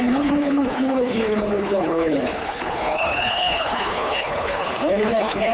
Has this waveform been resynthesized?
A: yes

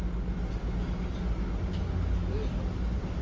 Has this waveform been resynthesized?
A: no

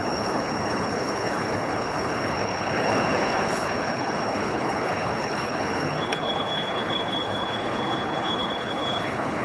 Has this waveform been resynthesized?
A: yes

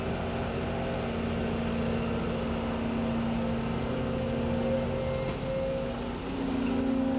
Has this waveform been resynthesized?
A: no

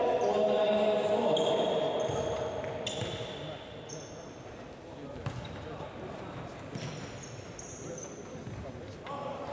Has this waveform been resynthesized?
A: no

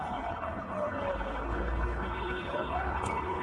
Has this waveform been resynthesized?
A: yes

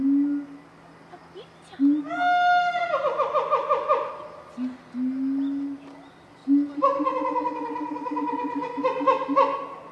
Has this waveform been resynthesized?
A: no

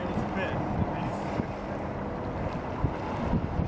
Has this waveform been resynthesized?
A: no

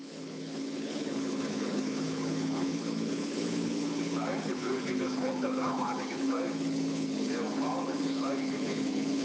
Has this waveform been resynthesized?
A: yes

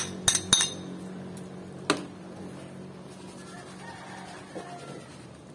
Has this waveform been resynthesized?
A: no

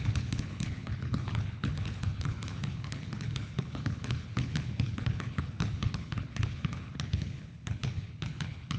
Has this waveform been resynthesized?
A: yes